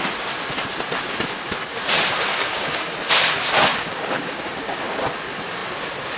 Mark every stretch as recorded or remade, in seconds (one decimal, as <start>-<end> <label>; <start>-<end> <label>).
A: 0.0-2.3 recorded; 2.3-2.9 remade; 2.9-3.7 recorded; 3.7-4.8 remade; 4.8-6.2 recorded